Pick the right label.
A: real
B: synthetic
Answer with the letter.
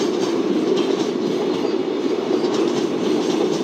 A